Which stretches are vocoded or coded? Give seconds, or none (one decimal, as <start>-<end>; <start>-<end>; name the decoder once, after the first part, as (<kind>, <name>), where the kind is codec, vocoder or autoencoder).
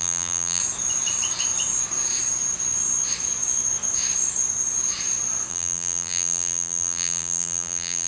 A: 0.0-0.6 (vocoder, BigVGAN v2); 5.5-8.1